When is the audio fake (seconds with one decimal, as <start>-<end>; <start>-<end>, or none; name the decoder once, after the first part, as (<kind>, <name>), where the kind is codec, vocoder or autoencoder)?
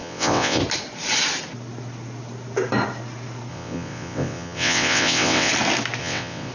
0.0-0.6 (vocoder, WaveNeXt); 3.5-5.5; 6.0-6.5